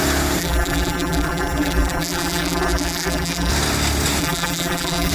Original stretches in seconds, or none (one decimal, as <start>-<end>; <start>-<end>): 0.0-0.4; 3.5-4.2